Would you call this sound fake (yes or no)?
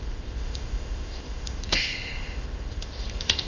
yes